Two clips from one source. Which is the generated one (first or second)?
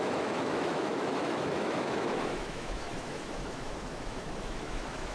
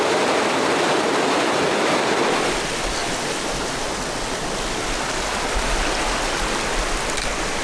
first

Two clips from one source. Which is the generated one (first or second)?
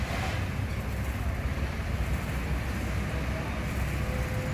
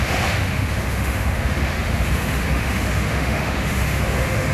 second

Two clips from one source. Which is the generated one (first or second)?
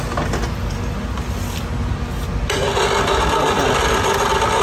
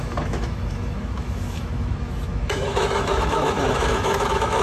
second